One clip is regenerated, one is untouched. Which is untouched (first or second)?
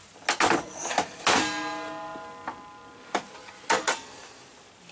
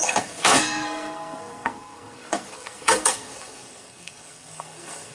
first